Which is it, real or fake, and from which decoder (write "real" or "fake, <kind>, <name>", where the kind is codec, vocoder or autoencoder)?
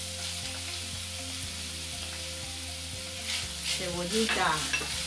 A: real